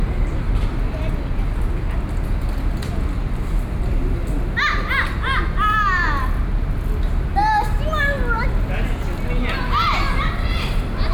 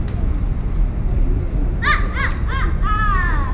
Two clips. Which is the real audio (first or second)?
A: first